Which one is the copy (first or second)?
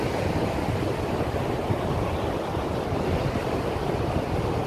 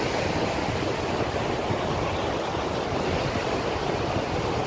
first